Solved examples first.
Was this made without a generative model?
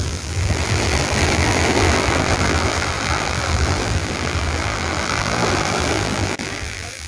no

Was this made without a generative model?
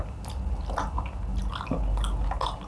yes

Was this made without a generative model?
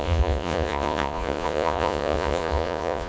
no